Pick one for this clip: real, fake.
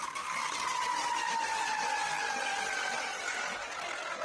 real